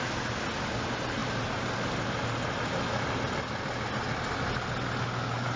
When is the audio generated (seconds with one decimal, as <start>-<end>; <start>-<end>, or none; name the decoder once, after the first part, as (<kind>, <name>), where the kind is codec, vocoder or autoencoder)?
none